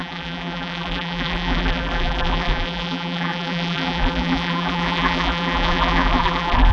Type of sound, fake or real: fake